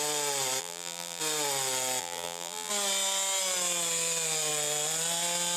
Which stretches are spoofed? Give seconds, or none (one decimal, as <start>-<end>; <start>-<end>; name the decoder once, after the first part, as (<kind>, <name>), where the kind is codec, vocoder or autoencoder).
0.6-1.2 (vocoder, BigVGAN v2); 2.0-2.7